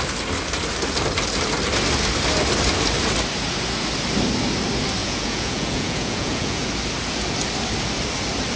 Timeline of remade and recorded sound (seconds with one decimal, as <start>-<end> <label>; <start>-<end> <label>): 0.0-5.0 recorded; 5.0-6.7 remade; 6.7-8.6 recorded